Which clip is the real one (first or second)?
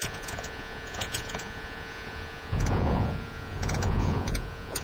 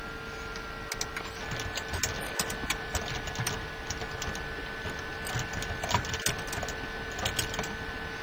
second